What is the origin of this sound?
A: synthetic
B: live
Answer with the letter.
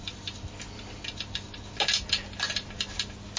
B